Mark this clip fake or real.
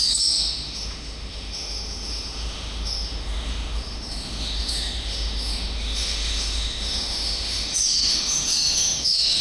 fake